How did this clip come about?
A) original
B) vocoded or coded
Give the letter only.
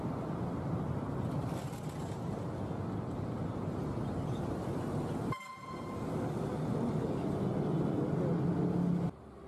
A